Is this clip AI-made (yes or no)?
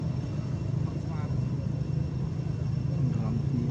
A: no